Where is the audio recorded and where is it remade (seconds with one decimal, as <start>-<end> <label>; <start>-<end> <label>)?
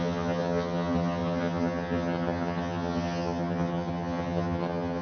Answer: 0.0-5.0 remade